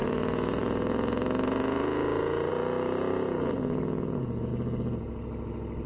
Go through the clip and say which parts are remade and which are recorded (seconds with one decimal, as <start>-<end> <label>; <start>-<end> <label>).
0.0-4.5 remade; 4.5-5.9 recorded

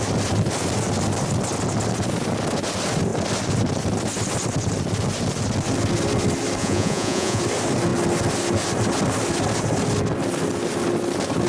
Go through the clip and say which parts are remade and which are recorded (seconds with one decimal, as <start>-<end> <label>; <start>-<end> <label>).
0.0-6.6 recorded; 6.6-7.4 remade; 7.4-11.5 recorded

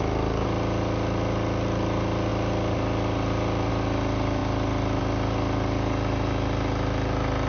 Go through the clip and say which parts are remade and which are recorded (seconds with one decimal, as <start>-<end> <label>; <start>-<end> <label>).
0.0-7.5 recorded

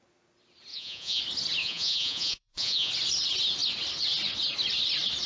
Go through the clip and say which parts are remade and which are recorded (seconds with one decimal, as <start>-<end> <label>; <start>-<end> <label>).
0.0-0.7 recorded; 0.7-1.2 remade; 1.2-1.6 recorded; 1.6-2.9 remade; 2.9-5.3 recorded

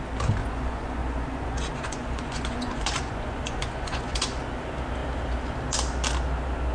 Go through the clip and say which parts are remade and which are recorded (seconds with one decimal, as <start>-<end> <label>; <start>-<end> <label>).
0.0-0.4 recorded; 0.4-4.4 remade; 4.4-6.7 recorded

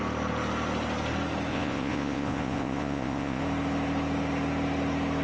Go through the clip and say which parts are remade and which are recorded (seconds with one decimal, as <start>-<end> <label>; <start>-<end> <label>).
0.0-1.5 recorded; 1.5-3.4 remade; 3.4-5.2 recorded